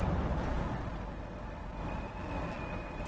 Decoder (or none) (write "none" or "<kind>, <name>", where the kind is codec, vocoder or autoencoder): none